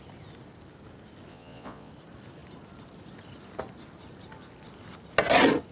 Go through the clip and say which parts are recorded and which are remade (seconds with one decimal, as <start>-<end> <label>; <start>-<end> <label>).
0.0-1.3 recorded; 1.3-1.9 remade; 1.9-5.7 recorded